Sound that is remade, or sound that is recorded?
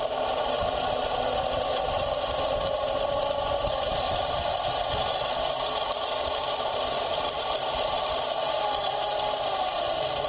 recorded